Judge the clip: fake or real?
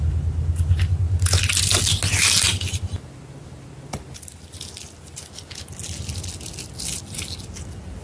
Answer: real